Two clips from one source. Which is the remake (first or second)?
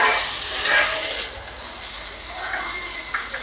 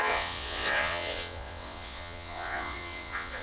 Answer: second